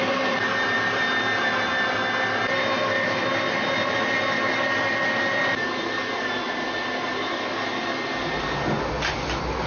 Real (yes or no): yes